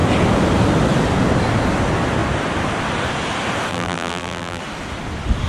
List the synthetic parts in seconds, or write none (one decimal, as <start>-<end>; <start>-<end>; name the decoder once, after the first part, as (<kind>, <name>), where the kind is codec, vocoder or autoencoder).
3.7-4.6 (vocoder, BigVGAN v2)